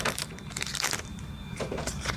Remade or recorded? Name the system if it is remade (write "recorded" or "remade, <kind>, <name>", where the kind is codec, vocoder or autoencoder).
remade, vocoder, BigVGAN v2